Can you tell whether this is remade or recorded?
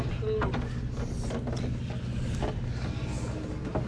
recorded